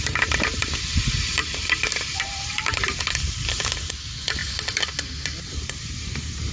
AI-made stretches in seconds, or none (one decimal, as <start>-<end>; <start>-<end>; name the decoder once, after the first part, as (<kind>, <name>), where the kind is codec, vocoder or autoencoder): 0.0-4.4 (vocoder, BigVGAN v2); 5.5-6.5